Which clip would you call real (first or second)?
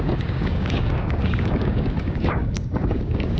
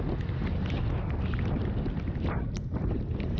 second